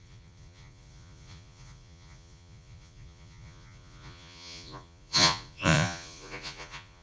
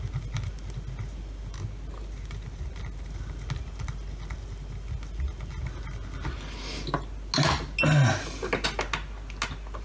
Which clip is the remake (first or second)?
first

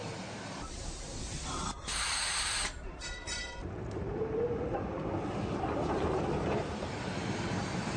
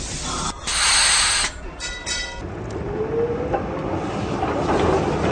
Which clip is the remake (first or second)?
first